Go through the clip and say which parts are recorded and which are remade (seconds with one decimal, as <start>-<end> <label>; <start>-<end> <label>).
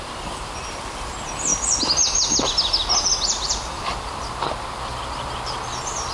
0.0-6.1 recorded